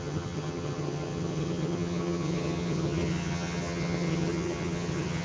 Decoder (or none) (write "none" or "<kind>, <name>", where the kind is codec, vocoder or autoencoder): vocoder, HiFi-GAN